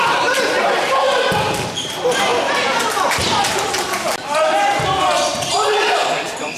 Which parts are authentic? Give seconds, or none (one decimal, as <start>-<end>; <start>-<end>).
none